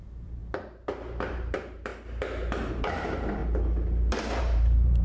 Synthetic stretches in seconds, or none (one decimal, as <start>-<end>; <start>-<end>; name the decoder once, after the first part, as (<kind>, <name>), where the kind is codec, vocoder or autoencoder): 0.0-0.4 (vocoder, BigVGAN v2); 1.3-1.9; 2.7-3.4; 4.4-5.0